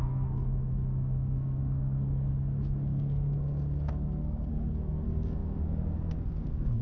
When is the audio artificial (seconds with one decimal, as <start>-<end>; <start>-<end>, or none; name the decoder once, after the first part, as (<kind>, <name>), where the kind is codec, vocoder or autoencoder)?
0.0-6.8 (codec, SNAC)

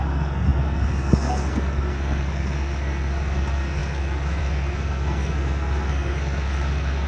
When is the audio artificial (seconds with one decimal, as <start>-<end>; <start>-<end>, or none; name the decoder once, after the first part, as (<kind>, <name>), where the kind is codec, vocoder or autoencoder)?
0.0-7.1 (codec, SNAC)

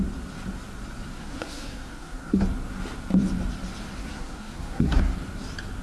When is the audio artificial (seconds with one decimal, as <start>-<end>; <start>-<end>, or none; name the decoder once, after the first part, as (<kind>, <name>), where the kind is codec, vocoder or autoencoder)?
1.1-2.4 (codec, SNAC); 4.0-5.0

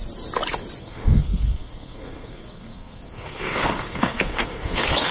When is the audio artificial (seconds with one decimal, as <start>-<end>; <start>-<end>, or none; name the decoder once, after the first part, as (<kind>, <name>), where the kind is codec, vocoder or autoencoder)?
0.8-5.1 (codec, SNAC)

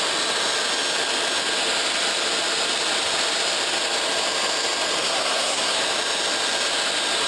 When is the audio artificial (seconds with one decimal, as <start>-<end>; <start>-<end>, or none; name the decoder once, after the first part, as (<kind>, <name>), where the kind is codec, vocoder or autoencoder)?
5.0-5.8 (codec, SNAC)

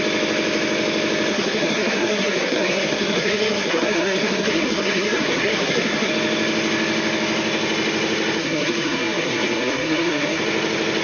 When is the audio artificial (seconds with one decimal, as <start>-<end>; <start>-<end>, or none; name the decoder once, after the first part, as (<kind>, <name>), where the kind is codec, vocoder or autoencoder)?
1.3-6.1 (codec, SNAC); 8.4-10.4

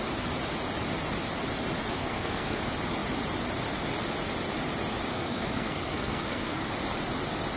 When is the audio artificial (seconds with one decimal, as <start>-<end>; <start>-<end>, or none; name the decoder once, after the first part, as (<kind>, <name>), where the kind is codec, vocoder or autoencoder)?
2.0-2.6 (codec, SNAC); 5.1-6.7